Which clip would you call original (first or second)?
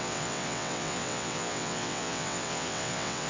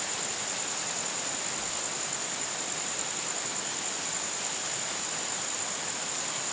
second